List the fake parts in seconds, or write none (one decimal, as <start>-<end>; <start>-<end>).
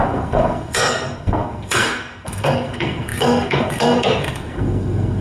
0.0-5.2